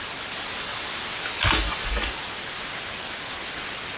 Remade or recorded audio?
recorded